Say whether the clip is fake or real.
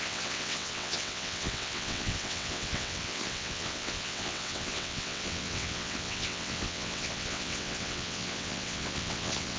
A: fake